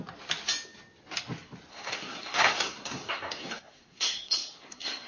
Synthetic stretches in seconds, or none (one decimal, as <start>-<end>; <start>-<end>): 1.7-5.1